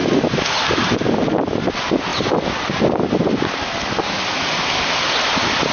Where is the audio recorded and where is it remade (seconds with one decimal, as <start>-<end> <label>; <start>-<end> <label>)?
0.0-5.7 recorded